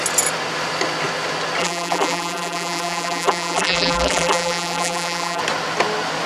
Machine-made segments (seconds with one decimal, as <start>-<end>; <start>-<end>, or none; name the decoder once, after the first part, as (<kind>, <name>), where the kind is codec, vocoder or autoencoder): 1.6-5.4 (vocoder, BigVGAN v2)